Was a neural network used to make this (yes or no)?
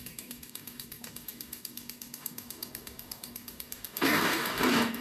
yes